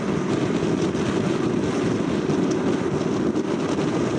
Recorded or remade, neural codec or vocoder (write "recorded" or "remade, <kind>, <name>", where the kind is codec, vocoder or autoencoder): recorded